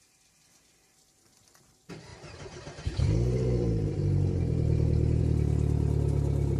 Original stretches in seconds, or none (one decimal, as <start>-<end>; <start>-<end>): 0.0-2.1; 5.2-6.6